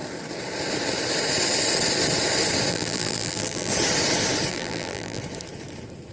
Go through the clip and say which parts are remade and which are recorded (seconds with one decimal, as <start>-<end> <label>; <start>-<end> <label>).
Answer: 0.0-2.7 recorded; 2.7-3.7 remade; 3.7-4.5 recorded; 4.5-5.2 remade; 5.2-6.1 recorded